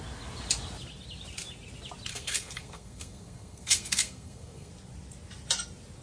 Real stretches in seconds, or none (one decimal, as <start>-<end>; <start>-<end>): 0.0-2.1; 4.7-6.0